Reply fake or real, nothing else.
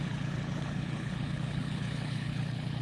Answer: fake